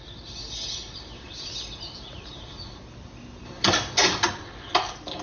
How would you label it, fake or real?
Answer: real